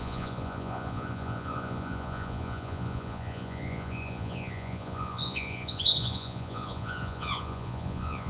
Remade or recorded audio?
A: remade